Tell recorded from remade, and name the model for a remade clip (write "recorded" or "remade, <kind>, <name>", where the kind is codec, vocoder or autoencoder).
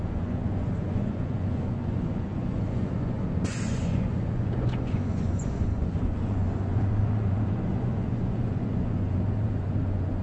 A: remade, vocoder, Vocos